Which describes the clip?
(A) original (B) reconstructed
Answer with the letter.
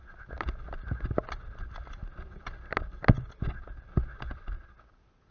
A